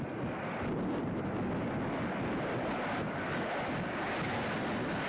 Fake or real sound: real